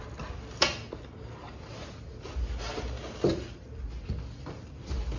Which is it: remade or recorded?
recorded